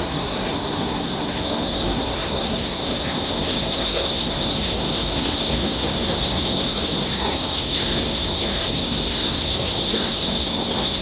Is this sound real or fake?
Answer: fake